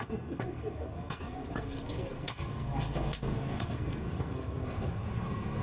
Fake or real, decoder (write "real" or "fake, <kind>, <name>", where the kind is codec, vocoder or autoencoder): fake, codec, SNAC